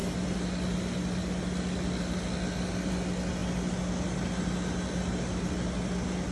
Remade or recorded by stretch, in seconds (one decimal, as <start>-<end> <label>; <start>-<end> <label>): 0.0-6.3 recorded